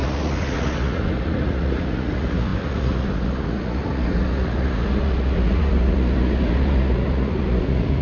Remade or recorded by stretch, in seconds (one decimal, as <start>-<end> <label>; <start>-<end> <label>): 0.0-8.0 remade